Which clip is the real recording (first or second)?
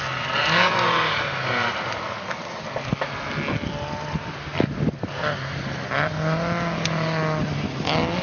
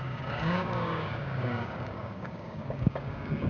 first